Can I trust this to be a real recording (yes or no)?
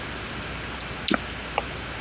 yes